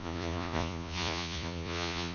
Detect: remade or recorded remade